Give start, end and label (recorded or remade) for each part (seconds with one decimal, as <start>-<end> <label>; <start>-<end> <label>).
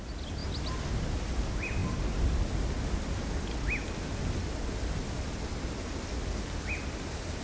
0.0-7.4 recorded